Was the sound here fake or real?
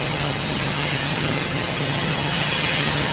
fake